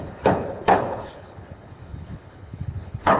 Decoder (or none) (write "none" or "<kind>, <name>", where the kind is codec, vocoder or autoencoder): codec, HILCodec